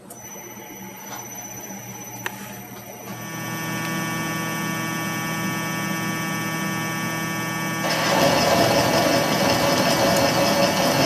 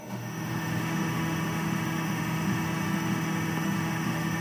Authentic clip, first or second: first